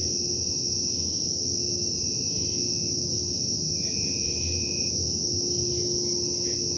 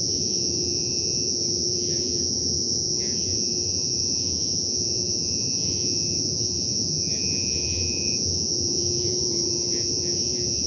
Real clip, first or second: first